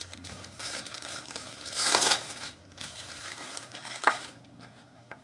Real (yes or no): no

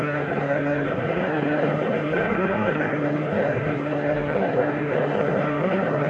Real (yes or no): no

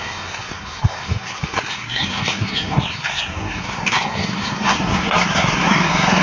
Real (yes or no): no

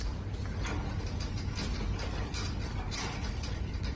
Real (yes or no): yes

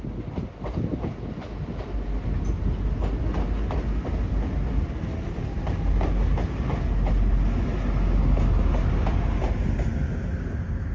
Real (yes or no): yes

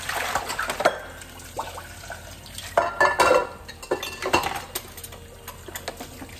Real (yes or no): yes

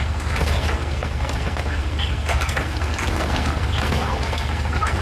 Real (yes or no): no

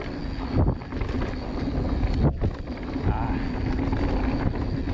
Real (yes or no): yes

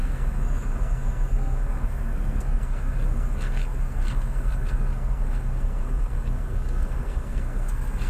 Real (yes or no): no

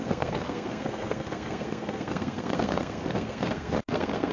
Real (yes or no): no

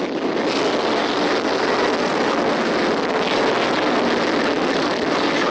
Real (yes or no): yes